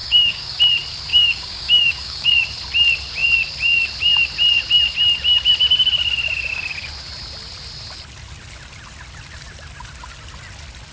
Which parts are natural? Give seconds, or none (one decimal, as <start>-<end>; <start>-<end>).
0.6-1.1; 2.3-10.9